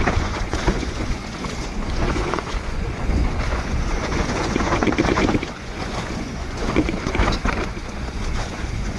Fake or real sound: fake